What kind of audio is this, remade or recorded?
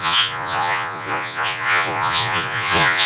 remade